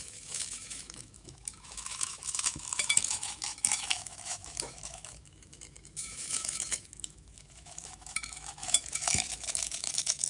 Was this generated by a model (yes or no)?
yes